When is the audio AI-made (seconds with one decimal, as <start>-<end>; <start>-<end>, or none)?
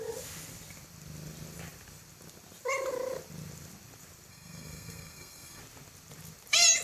4.3-5.6